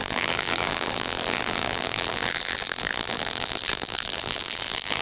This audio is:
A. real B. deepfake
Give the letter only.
B